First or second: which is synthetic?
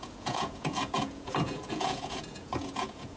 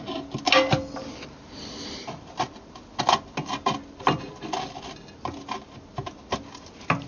first